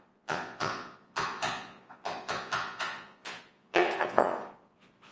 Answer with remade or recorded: remade